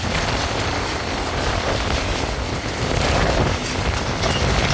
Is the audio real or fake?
real